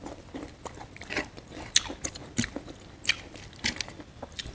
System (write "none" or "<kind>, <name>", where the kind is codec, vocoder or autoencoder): vocoder, BigVGAN v2